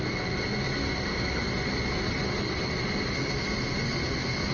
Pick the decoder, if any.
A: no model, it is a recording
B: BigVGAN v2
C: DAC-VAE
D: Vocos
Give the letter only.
A